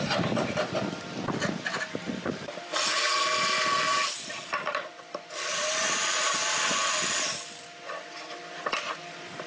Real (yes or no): yes